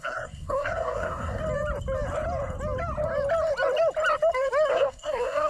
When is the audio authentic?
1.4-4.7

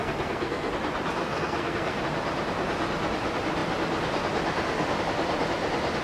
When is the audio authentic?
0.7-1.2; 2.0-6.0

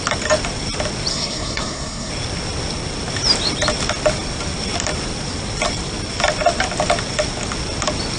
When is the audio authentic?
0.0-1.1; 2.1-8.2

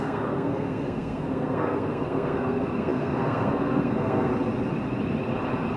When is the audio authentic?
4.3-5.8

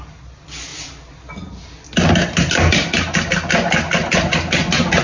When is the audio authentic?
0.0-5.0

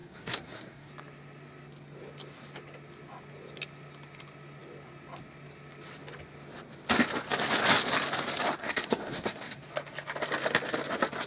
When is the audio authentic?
0.9-8.6; 9.6-11.3

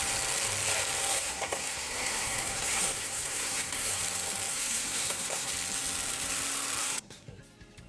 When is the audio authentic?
0.0-1.1; 4.0-4.5; 5.5-6.8; 7.4-7.9